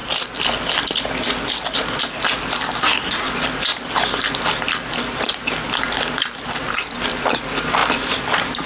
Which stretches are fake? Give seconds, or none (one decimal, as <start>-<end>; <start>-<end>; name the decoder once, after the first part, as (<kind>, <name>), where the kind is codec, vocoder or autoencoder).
2.8-3.3 (codec, SNAC)